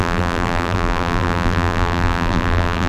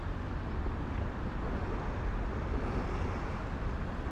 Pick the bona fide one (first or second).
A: second